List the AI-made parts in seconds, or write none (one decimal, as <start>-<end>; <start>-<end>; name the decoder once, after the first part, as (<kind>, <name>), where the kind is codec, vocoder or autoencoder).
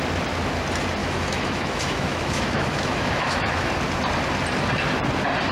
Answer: 1.0-3.7 (autoencoder, DAC-VAE)